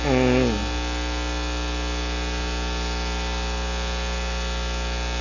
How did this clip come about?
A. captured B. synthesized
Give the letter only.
A